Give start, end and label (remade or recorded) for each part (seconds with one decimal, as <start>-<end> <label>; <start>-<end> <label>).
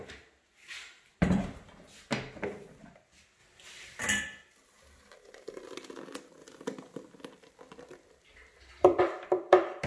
0.0-9.9 recorded